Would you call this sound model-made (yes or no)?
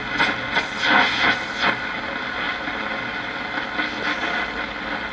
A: no